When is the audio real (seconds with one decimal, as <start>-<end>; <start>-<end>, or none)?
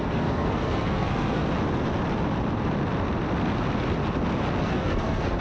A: 1.4-4.6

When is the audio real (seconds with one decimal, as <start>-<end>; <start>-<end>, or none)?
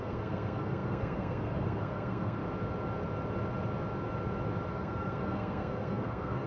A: 2.4-4.7